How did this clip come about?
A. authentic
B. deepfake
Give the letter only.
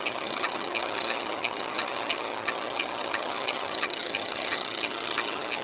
B